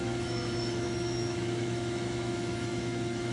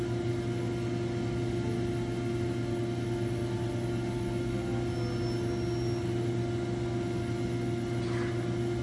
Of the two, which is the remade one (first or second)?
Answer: first